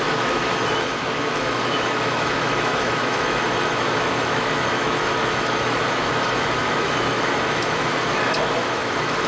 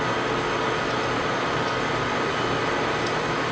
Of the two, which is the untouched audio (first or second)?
second